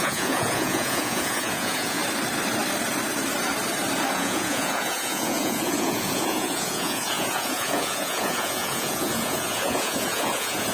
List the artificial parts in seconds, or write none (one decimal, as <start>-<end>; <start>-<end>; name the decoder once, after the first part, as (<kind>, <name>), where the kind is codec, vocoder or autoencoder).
0.0-2.0 (vocoder, Vocos); 4.1-10.7